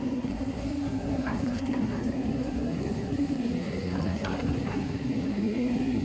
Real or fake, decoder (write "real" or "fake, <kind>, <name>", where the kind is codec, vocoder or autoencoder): fake, codec, SNAC